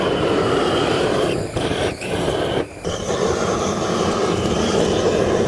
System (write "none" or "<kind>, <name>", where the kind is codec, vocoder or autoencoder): vocoder, BigVGAN v2